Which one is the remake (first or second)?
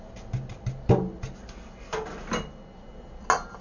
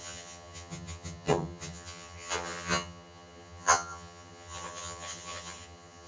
second